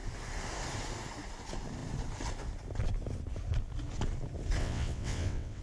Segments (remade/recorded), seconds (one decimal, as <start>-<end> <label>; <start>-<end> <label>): 0.0-4.6 recorded; 4.6-5.6 remade